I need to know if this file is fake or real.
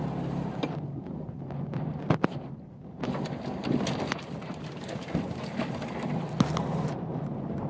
real